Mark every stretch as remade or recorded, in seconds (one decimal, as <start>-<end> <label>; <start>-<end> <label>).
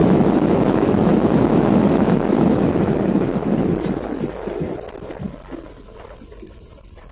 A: 0.0-3.5 remade; 3.5-7.1 recorded